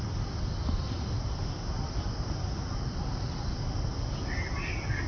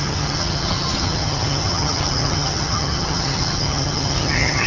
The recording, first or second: first